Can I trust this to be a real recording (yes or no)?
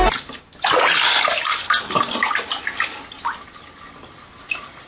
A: yes